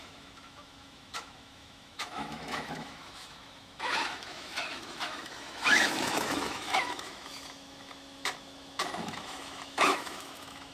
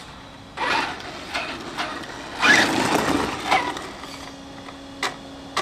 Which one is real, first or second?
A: second